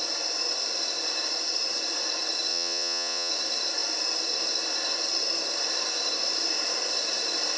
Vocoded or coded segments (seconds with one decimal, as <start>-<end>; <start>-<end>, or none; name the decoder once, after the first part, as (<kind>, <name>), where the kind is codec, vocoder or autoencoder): 2.5-3.3 (vocoder, Vocos)